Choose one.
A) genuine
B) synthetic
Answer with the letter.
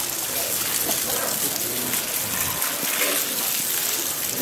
A